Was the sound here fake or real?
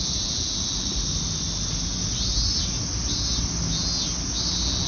real